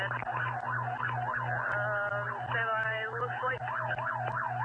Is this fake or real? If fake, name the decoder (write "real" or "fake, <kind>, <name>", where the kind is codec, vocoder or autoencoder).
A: real